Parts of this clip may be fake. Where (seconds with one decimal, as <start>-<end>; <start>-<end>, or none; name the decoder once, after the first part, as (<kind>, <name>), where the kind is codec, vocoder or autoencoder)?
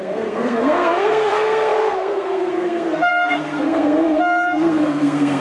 0.0-5.4 (codec, SNAC)